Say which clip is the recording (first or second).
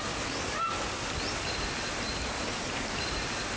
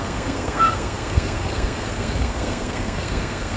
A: first